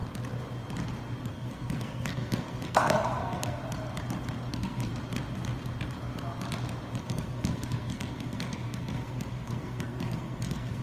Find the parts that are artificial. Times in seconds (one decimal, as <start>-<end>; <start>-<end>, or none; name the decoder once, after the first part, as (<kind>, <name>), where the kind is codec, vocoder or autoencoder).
1.3-3.6 (codec, SNAC); 4.5-4.9; 7.0-10.8